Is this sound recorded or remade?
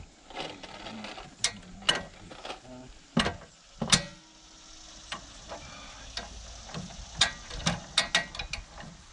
recorded